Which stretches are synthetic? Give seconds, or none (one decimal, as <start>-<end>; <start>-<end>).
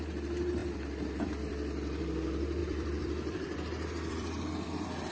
0.6-2.0; 2.6-5.1